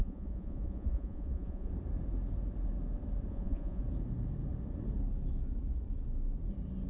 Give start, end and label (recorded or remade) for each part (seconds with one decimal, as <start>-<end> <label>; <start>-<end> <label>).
0.0-1.7 remade; 1.7-3.3 recorded; 3.3-3.8 remade; 3.8-6.9 recorded